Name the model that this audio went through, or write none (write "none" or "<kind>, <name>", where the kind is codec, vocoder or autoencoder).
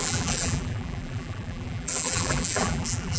vocoder, BigVGAN v2